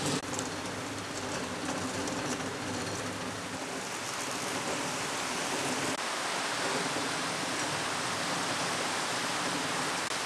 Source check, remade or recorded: recorded